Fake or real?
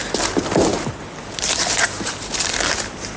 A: real